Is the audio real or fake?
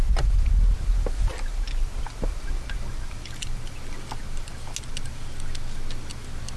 real